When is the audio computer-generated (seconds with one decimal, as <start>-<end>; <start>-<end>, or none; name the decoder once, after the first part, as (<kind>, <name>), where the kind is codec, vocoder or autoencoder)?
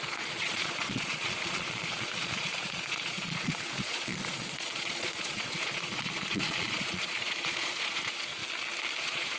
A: 0.0-8.4 (vocoder, Vocos); 9.0-9.4